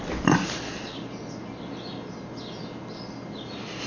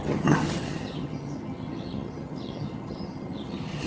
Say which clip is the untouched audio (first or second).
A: first